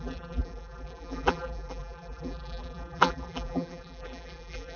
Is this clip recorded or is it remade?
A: remade